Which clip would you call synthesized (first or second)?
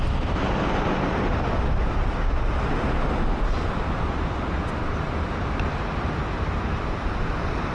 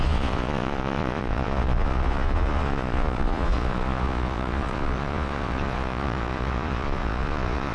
second